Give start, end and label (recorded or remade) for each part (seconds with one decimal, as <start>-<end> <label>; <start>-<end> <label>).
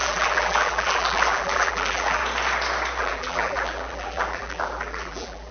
0.0-2.2 remade; 2.2-3.0 recorded; 3.0-5.5 remade